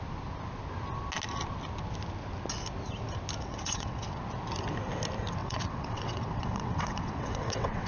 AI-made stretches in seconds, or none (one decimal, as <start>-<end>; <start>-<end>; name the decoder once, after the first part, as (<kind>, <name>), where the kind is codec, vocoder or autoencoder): 3.4-4.2 (vocoder, WaveNeXt); 5.4-7.9